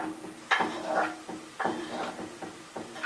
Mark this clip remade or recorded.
remade